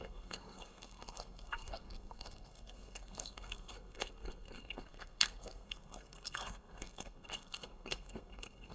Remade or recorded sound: remade